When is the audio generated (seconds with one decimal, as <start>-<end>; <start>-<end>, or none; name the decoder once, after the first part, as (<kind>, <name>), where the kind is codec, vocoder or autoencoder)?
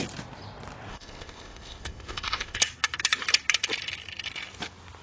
0.9-2.6 (codec, ZipCodec)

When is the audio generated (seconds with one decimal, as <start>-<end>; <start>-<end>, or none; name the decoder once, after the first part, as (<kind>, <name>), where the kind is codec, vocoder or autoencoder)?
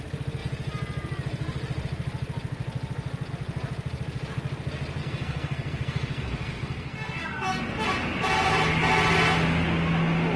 5.0-7.6 (codec, SNAC)